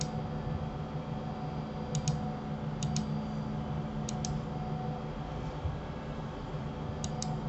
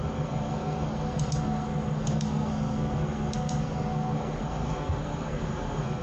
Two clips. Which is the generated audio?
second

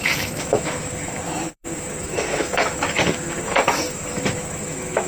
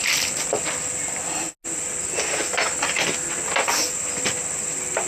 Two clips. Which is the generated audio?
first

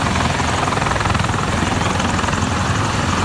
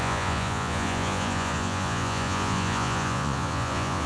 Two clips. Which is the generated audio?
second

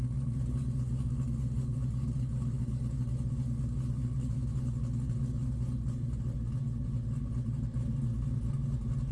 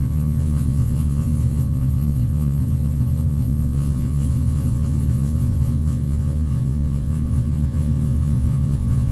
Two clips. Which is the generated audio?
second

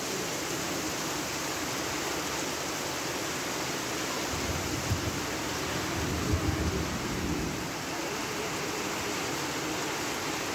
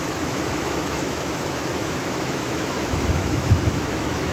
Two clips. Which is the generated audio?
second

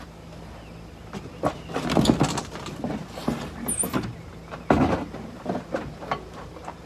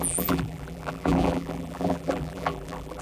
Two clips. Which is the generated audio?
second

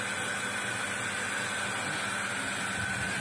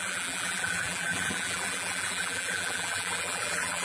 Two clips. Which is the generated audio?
second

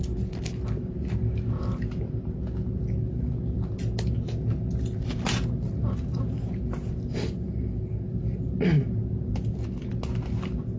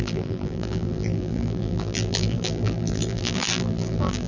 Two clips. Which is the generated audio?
second